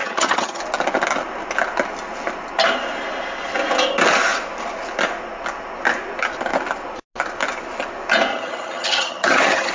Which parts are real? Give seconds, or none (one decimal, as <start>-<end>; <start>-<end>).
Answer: 0.6-8.3